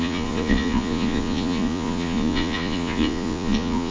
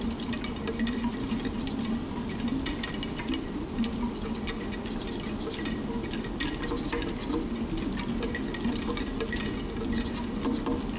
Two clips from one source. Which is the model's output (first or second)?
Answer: first